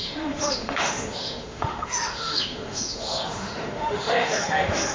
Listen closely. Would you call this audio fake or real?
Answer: fake